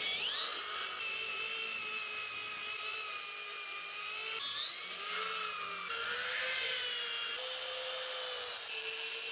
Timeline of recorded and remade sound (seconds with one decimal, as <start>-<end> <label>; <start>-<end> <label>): 0.0-9.3 recorded